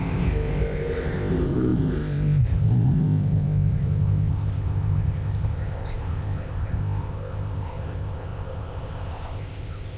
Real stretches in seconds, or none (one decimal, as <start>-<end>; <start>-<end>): none